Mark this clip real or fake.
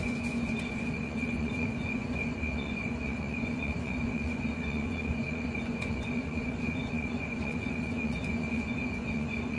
fake